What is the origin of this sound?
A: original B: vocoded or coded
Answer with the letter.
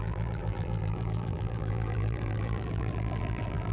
B